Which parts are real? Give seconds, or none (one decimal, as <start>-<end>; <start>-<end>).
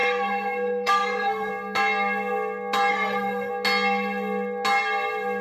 1.5-2.9; 3.5-5.4